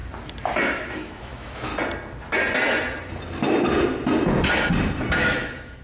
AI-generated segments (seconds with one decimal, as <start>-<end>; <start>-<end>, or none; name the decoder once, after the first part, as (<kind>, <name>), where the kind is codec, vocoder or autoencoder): 0.6-1.7 (autoencoder, DAC-VAE); 5.2-5.8